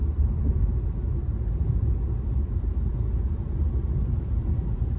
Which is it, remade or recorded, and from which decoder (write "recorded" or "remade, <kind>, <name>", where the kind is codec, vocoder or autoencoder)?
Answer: recorded